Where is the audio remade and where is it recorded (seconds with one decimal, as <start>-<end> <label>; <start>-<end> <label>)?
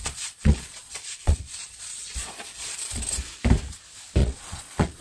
0.0-3.0 remade; 3.0-4.2 recorded; 4.2-5.0 remade